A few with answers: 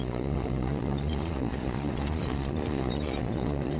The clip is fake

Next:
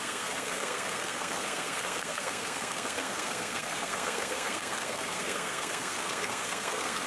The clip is fake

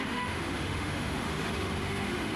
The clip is fake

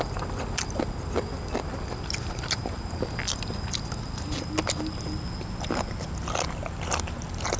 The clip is real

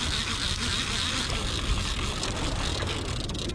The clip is real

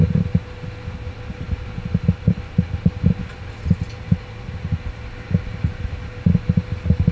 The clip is real